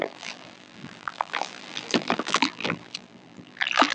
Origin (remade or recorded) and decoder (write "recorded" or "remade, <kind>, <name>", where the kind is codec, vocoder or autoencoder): remade, vocoder, BigVGAN v2